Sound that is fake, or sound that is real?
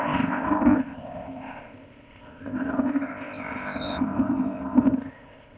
fake